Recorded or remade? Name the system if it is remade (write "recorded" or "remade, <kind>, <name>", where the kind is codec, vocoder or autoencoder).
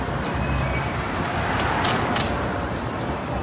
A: recorded